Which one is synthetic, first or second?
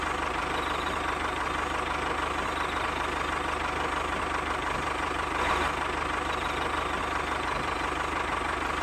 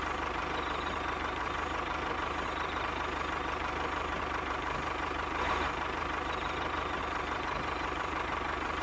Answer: second